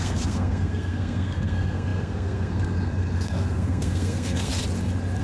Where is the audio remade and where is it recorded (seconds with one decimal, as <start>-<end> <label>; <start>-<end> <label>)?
0.0-4.5 remade; 4.5-5.2 recorded